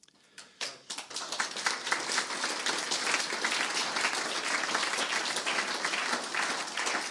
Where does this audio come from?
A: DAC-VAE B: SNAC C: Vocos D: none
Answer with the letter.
D